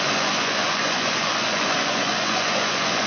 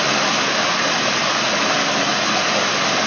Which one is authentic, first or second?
second